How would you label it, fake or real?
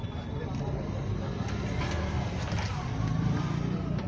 real